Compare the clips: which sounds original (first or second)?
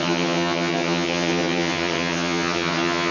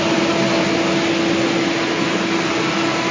second